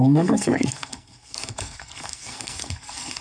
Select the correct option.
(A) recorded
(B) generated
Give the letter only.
B